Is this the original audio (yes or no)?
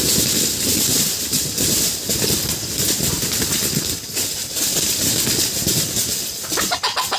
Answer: yes